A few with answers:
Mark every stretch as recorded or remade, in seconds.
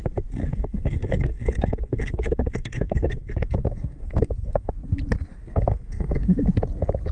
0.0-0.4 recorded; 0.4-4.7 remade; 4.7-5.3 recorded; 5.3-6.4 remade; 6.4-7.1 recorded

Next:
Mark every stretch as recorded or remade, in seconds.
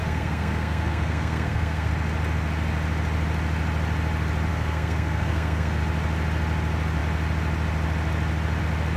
0.0-1.9 remade; 1.9-4.5 recorded; 4.5-5.8 remade; 5.8-9.0 recorded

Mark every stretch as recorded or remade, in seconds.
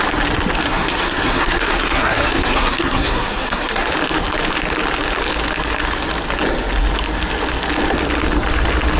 0.0-0.6 recorded; 0.6-3.9 remade; 3.9-9.0 recorded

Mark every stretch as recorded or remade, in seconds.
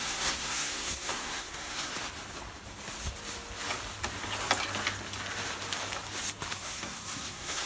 0.0-1.9 remade; 1.9-6.5 recorded; 6.5-7.7 remade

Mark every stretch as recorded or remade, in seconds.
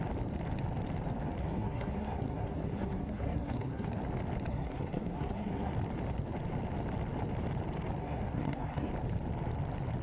0.0-1.4 recorded; 1.4-3.9 remade; 3.9-4.5 recorded; 4.5-5.7 remade; 5.7-8.0 recorded; 8.0-8.9 remade; 8.9-10.0 recorded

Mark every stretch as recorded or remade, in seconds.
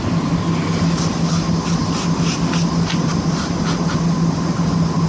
0.0-5.1 recorded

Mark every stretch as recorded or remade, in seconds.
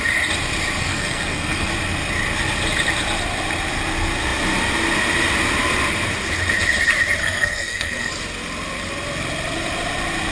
0.0-0.8 recorded; 0.8-1.7 remade; 1.7-7.2 recorded; 7.2-8.1 remade; 8.1-10.3 recorded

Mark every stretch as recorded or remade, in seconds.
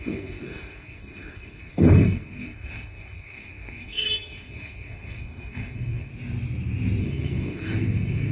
0.0-6.1 remade; 6.1-7.0 recorded; 7.0-8.3 remade